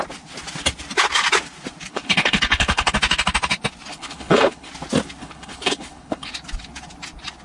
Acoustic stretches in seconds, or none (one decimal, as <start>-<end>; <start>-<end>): 0.0-1.9; 2.9-3.9; 4.7-5.2; 6.3-7.4